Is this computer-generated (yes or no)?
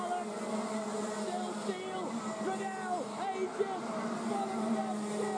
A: no